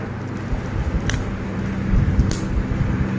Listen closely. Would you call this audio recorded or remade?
recorded